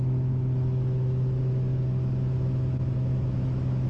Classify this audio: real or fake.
fake